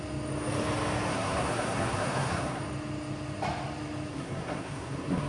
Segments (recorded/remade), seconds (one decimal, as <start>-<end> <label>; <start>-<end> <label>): 0.0-1.1 recorded; 1.1-2.6 remade; 2.6-4.1 recorded; 4.1-5.3 remade